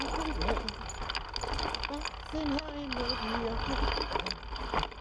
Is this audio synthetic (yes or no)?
no